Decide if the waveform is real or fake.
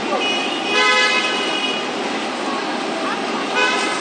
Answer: real